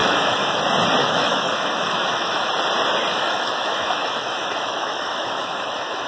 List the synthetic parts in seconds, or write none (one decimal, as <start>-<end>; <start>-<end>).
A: 0.0-0.6; 1.0-2.5; 3.1-6.1